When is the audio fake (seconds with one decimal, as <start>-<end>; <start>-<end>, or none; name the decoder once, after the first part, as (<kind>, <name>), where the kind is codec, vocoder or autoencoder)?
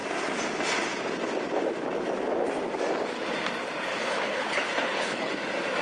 3.9-5.3 (codec, HILCodec)